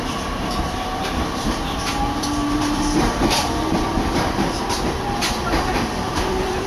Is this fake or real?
fake